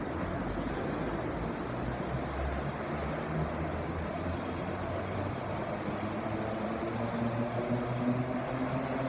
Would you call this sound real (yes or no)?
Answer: yes